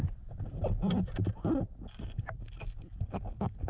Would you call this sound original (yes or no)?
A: yes